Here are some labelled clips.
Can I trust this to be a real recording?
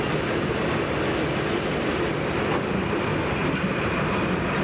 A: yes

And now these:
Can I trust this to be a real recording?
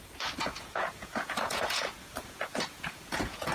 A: no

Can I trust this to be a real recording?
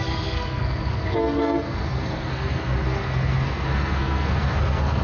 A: no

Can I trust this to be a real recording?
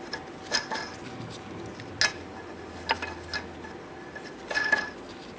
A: yes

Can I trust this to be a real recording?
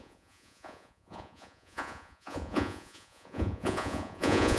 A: no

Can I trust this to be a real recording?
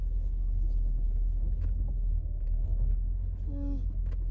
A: yes